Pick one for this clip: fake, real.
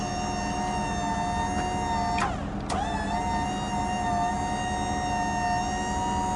real